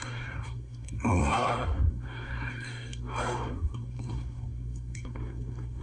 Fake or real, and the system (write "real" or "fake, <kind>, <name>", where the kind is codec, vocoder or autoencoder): fake, codec, SNAC